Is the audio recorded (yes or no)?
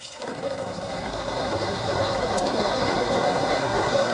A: no